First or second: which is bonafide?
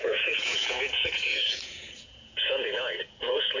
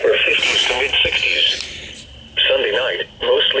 second